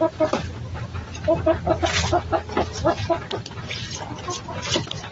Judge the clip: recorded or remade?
recorded